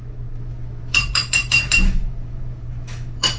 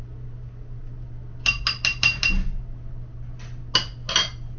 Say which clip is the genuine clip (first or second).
second